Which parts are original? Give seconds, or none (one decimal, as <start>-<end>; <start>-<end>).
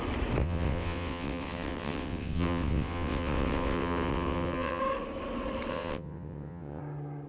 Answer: 0.0-0.4; 4.8-5.7; 6.8-7.3